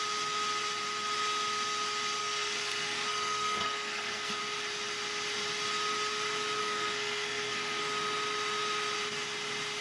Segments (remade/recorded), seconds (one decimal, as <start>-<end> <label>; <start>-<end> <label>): 0.0-2.2 recorded; 2.2-4.4 remade; 4.4-6.6 recorded; 6.6-7.8 remade; 7.8-9.8 recorded